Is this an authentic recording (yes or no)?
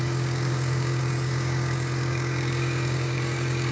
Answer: no